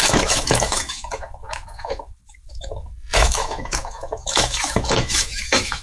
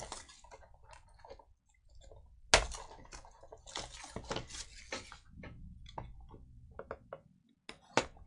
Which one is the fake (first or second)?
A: first